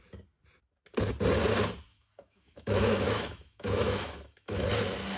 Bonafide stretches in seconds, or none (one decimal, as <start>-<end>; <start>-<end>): 0.0-1.9; 4.7-5.2